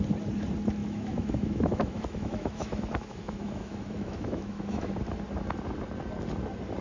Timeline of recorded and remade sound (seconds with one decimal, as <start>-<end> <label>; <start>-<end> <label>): 0.0-0.8 recorded; 0.8-4.9 remade; 4.9-6.8 recorded